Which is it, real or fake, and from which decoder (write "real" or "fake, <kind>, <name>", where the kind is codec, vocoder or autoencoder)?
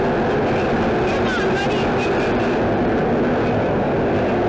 real